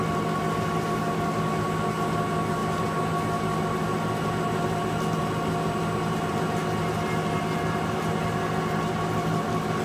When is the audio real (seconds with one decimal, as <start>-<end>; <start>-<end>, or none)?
0.0-9.8